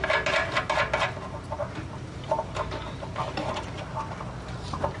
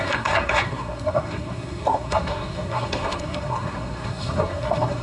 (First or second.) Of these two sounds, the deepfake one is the second